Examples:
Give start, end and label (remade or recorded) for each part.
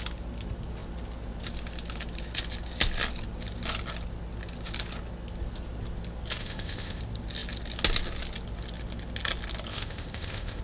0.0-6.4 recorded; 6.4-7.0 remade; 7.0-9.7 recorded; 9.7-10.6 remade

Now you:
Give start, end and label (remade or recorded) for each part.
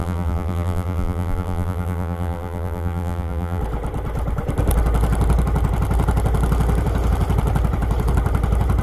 0.0-3.6 remade; 3.6-8.8 recorded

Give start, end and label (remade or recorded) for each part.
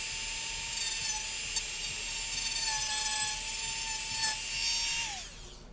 0.0-5.7 recorded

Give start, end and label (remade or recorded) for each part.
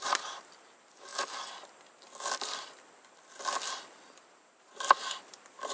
0.0-1.1 remade; 1.1-4.5 recorded; 4.5-5.7 remade